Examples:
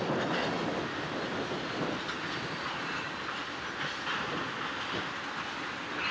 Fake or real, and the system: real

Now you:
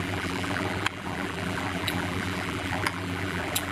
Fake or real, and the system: fake, vocoder, BigVGAN v2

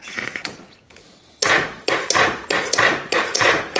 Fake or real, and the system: fake, vocoder, Vocos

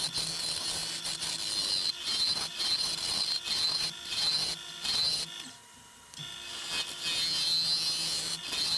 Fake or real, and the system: real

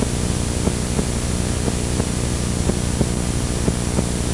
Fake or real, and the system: real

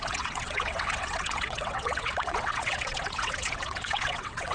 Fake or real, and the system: fake, vocoder, WaveNeXt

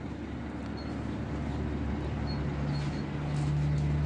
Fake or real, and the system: real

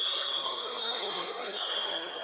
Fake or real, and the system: fake, codec, SNAC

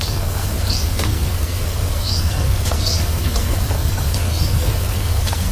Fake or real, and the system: fake, codec, SNAC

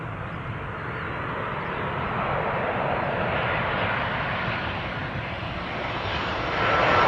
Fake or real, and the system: real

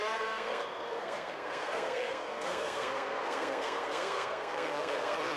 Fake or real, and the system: fake, codec, SNAC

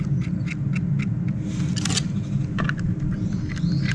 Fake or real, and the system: real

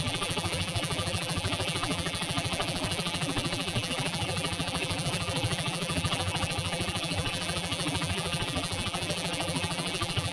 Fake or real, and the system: fake, vocoder, BigVGAN v2